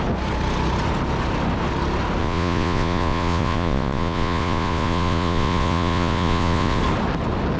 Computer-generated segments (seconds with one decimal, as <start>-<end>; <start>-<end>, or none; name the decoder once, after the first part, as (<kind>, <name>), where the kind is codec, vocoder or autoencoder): 2.2-6.8 (vocoder, Vocos)